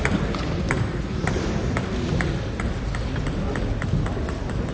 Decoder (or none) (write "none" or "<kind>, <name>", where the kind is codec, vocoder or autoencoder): none